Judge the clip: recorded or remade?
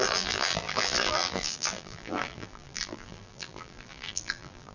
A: remade